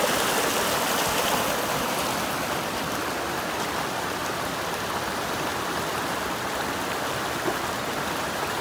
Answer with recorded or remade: recorded